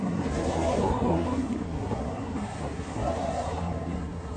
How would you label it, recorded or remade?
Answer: remade